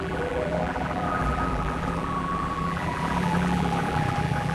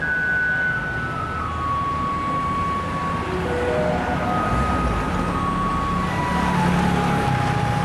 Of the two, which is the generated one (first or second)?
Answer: first